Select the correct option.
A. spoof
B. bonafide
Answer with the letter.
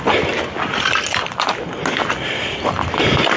B